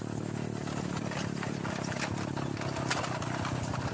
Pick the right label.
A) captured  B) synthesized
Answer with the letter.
A